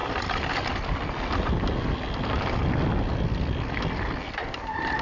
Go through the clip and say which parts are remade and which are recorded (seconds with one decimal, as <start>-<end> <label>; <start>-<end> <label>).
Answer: 0.0-5.0 recorded